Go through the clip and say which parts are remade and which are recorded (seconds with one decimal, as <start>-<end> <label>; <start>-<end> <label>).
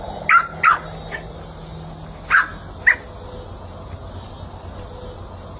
0.0-5.6 recorded